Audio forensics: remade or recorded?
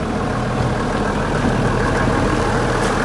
recorded